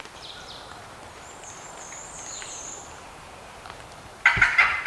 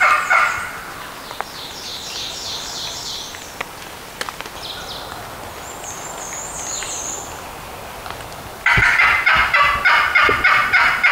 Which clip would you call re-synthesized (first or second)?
first